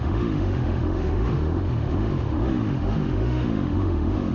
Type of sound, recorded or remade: remade